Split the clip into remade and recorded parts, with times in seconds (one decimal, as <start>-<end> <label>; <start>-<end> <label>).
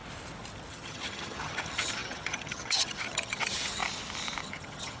0.0-0.7 recorded; 0.7-3.8 remade; 3.8-4.4 recorded; 4.4-5.0 remade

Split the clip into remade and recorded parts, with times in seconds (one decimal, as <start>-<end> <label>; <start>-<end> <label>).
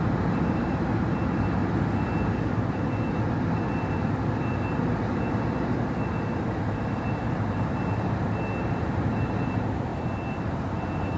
0.0-1.6 remade; 1.6-6.6 recorded; 6.6-9.9 remade; 9.9-10.4 recorded; 10.4-11.2 remade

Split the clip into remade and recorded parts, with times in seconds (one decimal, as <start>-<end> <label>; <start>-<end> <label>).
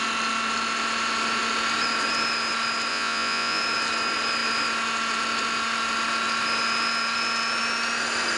0.0-2.9 recorded; 2.9-3.6 remade; 3.6-8.4 recorded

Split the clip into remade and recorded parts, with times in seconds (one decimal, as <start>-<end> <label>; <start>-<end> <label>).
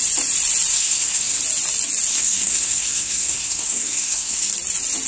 0.0-0.7 recorded; 0.7-1.4 remade; 1.4-2.1 recorded; 2.1-4.5 remade; 4.5-5.1 recorded